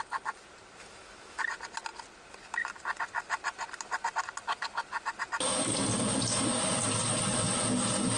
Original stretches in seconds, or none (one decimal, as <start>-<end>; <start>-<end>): 0.0-0.8; 1.4-8.2